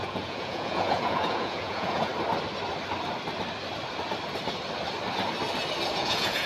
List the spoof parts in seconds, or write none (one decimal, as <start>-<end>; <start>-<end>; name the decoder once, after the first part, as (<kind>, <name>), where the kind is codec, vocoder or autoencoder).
0.0-2.1 (vocoder, Vocos); 5.9-6.5